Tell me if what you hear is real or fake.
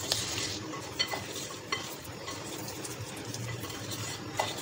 fake